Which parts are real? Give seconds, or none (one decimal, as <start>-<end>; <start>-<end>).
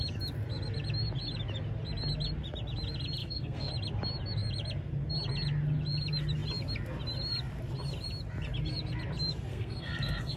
0.0-3.2; 3.7-9.5